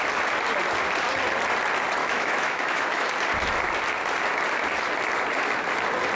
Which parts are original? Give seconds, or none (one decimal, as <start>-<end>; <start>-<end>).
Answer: 0.0-2.0; 3.1-6.1